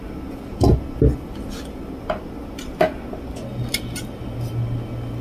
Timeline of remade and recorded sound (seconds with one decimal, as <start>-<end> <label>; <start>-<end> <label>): 0.0-5.2 recorded